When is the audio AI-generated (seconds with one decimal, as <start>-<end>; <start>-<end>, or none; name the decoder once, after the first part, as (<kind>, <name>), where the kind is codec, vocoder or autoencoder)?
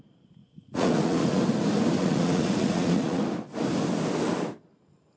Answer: 0.4-1.4 (vocoder, Vocos); 2.0-3.2